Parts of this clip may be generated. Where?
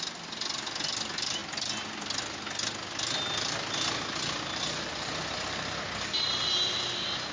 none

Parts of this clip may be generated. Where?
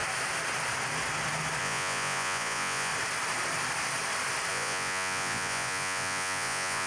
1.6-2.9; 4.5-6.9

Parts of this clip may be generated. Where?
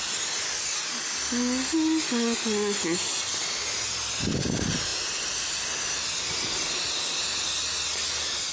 none